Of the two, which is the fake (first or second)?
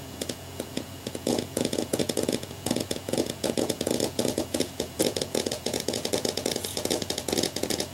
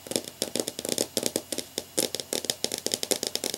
first